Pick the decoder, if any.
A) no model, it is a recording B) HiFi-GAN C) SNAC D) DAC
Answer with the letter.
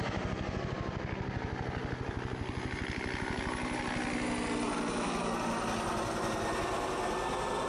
A